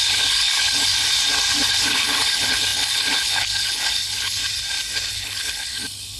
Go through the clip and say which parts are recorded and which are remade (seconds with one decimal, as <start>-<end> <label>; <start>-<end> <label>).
0.0-0.9 remade; 0.9-1.7 recorded; 1.7-4.4 remade; 4.4-5.1 recorded; 5.1-6.2 remade